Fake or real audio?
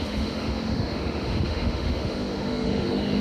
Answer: fake